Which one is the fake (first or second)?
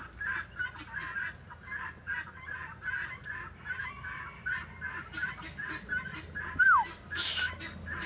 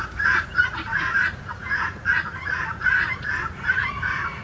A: second